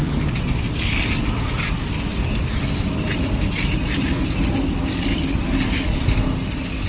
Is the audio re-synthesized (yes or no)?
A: no